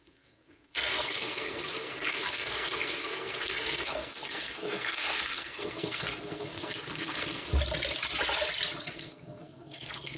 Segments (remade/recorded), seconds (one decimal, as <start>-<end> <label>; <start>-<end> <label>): 0.0-7.5 remade; 7.5-8.9 recorded; 8.9-10.2 remade